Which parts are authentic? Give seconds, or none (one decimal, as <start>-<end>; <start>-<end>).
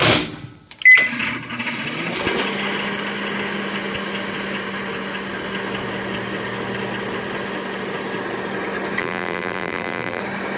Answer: 0.0-9.0; 10.2-10.6